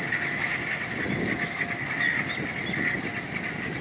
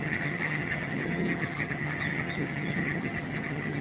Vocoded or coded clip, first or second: second